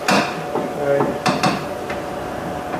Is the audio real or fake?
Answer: real